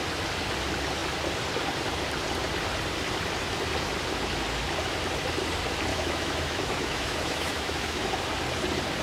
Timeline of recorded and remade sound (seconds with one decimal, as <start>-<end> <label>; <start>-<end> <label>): 0.0-5.9 recorded; 5.9-8.1 remade; 8.1-9.0 recorded

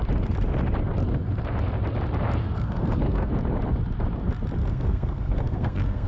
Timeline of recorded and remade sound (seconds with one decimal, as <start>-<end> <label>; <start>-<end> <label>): 0.0-2.4 recorded; 2.4-3.3 remade; 3.3-4.6 recorded; 4.6-6.1 remade

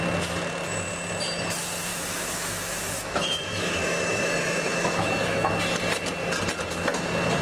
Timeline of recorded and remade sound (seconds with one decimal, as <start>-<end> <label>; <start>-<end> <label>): 0.0-1.9 recorded; 1.9-5.5 remade; 5.5-7.4 recorded